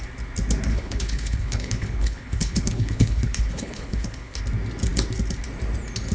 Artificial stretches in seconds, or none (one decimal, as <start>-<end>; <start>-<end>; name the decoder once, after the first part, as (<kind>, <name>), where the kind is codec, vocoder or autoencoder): 0.7-4.4 (codec, HILCodec)